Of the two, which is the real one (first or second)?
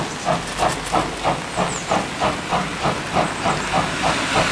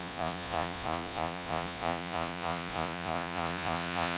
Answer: first